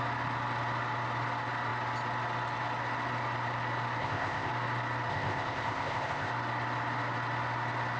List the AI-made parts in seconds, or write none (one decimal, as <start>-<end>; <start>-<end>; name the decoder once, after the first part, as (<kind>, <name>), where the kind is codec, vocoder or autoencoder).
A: 4.0-4.5 (codec, ZipCodec); 5.1-6.3